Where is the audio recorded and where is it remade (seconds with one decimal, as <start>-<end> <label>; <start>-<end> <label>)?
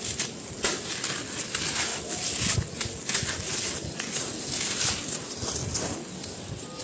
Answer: 0.0-6.8 recorded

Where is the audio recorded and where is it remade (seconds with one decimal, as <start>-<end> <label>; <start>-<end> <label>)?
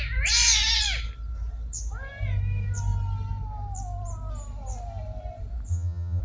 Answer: 0.0-5.7 recorded; 5.7-6.2 remade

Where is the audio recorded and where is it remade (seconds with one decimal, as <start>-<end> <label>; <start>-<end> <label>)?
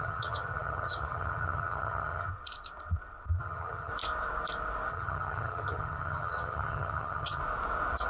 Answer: 0.0-2.3 remade; 2.3-3.4 recorded; 3.4-3.9 remade; 3.9-4.9 recorded; 4.9-7.4 remade; 7.4-8.1 recorded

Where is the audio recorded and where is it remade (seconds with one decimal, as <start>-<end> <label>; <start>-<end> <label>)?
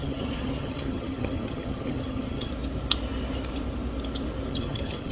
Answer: 0.0-2.5 remade; 2.5-4.5 recorded; 4.5-5.1 remade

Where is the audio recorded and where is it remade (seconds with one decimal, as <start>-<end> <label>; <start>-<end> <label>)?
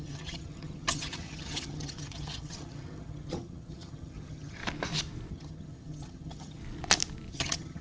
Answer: 0.0-4.6 remade; 4.6-5.3 recorded; 5.3-6.6 remade; 6.6-7.3 recorded; 7.3-7.8 remade